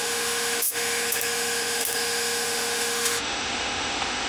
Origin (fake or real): fake